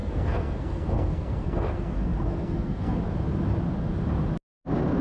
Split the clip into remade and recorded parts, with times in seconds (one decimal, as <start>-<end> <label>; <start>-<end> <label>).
0.0-3.0 remade; 3.0-5.0 recorded